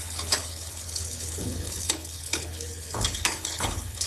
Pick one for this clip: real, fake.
fake